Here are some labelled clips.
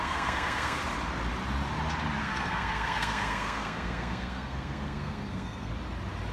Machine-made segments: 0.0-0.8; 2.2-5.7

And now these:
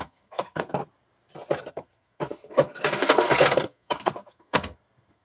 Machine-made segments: 0.0-0.8; 1.7-5.2